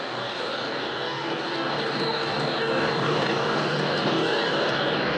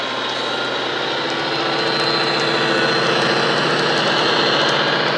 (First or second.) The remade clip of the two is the first